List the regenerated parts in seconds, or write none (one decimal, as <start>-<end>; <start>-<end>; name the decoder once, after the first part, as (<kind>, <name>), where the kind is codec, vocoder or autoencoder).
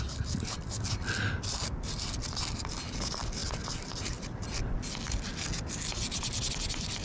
none